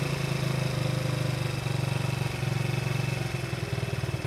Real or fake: real